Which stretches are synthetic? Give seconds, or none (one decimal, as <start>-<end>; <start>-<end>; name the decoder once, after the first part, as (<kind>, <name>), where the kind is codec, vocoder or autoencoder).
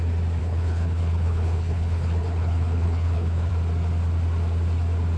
0.4-3.5 (codec, HILCodec)